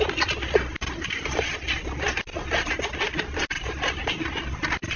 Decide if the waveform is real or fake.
real